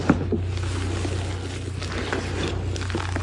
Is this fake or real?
real